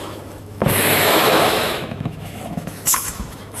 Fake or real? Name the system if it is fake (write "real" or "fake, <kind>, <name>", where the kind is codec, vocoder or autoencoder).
fake, autoencoder, DAC-VAE